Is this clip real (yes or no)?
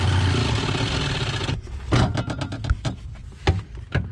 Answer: yes